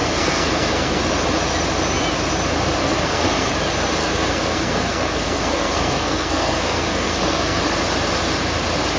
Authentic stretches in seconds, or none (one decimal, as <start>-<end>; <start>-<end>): 1.0-2.8; 3.5-4.0; 7.6-9.0